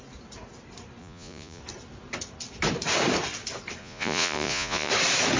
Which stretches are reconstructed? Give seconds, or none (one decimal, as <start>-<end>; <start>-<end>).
1.0-1.6; 3.8-4.9